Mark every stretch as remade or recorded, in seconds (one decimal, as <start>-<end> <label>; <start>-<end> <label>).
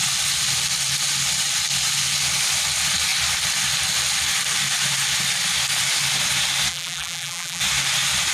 0.0-6.7 recorded; 6.7-7.6 remade; 7.6-8.3 recorded